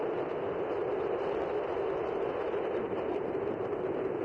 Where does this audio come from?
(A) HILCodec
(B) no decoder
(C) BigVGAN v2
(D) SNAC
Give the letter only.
B